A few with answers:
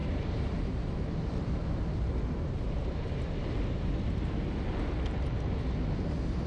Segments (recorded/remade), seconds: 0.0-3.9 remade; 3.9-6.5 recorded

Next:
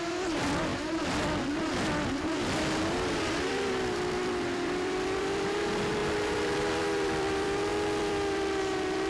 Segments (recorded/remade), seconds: 0.0-9.1 remade